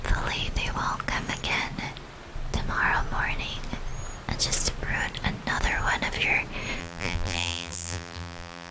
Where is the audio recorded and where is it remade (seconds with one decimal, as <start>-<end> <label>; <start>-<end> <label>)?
0.0-6.8 recorded; 6.8-8.7 remade